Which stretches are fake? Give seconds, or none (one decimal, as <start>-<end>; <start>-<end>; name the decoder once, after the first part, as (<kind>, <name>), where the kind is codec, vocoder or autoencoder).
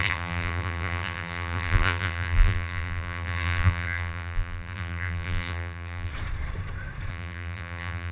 0.0-6.1 (vocoder, BigVGAN v2); 7.1-8.1